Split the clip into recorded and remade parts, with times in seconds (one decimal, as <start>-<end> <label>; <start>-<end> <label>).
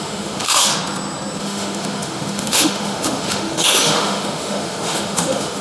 0.0-0.7 remade; 0.7-1.4 recorded; 1.4-5.6 remade